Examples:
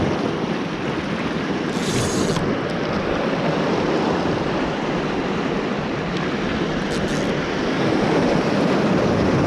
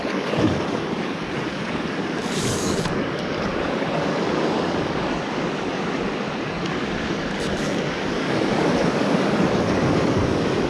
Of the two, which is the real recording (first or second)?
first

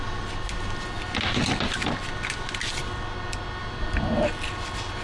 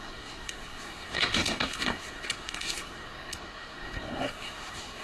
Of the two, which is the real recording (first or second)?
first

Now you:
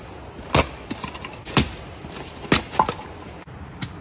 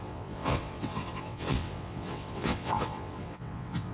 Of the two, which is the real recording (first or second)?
first